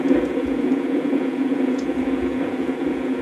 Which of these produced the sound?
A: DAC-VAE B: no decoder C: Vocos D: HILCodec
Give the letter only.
C